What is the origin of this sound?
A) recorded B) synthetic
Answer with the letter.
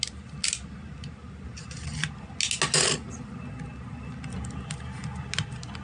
A